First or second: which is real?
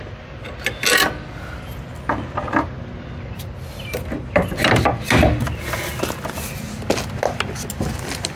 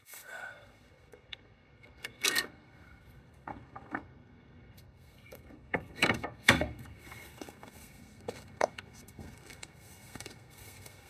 first